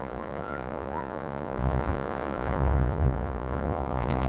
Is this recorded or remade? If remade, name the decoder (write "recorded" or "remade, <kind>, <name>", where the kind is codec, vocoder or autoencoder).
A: remade, vocoder, Vocos